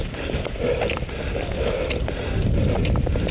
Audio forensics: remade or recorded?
recorded